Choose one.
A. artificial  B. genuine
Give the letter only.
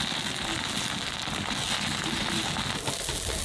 B